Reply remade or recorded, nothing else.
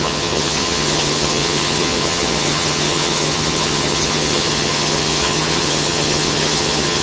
remade